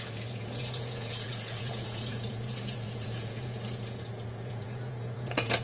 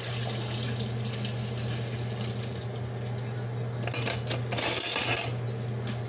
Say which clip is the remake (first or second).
first